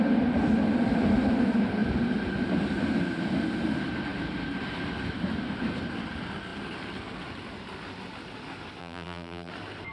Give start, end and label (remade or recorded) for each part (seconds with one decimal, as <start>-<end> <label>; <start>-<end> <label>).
0.0-8.8 recorded; 8.8-9.5 remade; 9.5-9.9 recorded